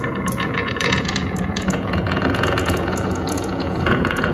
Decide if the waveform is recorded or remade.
remade